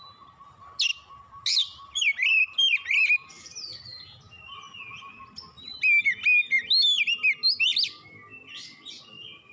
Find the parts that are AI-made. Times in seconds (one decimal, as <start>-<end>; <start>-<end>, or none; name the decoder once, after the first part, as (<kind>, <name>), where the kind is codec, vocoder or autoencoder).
none